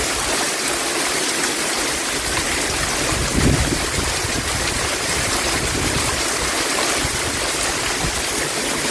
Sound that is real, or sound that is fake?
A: real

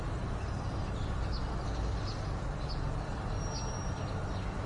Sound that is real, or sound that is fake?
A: real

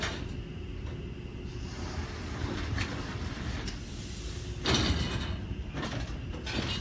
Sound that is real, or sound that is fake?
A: real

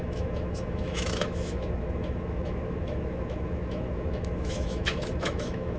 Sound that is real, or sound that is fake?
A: fake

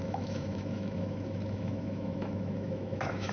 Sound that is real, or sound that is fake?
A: fake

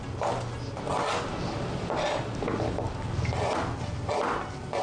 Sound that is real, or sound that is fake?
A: real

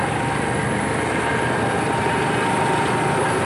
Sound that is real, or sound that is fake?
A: real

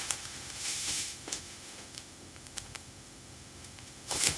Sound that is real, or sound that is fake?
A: fake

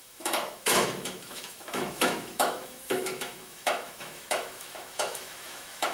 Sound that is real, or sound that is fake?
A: fake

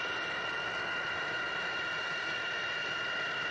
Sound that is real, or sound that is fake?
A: real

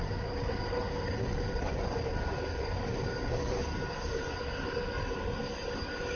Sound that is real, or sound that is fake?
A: real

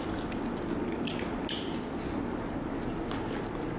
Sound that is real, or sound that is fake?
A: real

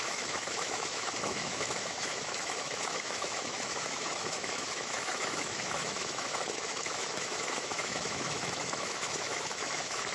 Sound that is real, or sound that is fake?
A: fake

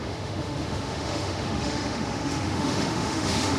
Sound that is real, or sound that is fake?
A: fake